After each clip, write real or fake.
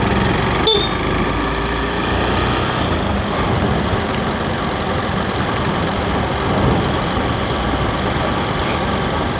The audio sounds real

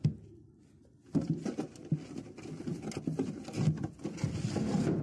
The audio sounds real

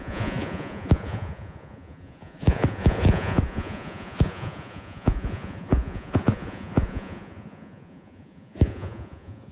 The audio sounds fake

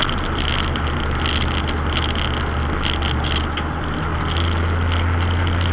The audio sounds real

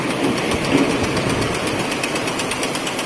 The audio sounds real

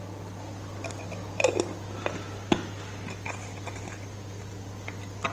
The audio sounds real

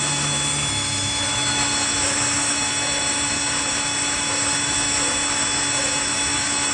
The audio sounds fake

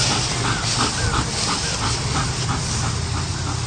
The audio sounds real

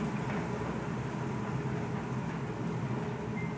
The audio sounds real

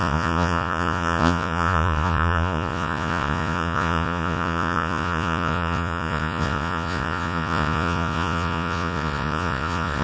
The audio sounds fake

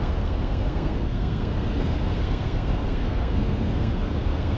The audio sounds fake